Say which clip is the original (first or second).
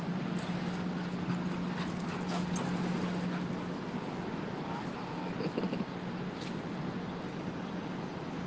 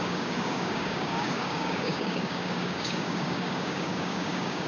first